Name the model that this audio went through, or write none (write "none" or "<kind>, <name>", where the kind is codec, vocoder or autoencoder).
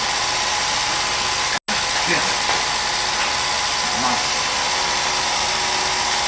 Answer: none